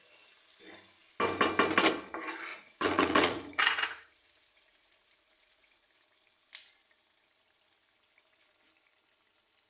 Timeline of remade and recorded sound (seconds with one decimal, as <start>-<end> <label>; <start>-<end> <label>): 0.0-2.5 recorded; 2.5-5.9 remade; 5.9-9.7 recorded